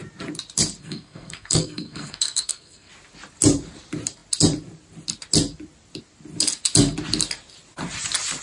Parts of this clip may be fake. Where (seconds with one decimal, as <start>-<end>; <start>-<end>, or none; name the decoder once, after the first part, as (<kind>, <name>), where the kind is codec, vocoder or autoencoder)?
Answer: 0.8-2.9 (codec, SNAC)